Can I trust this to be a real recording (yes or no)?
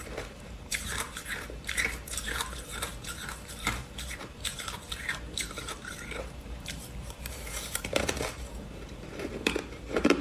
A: no